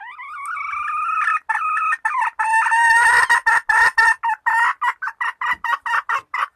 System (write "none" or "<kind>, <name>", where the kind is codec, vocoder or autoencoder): none